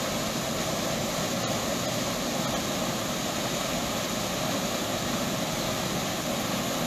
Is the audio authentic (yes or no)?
yes